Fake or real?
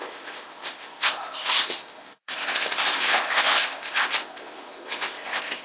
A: fake